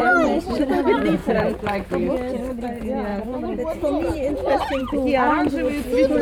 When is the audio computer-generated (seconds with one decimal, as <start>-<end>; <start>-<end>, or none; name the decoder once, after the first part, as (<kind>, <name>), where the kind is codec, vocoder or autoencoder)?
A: 1.2-1.9 (vocoder, Vocos); 3.1-4.9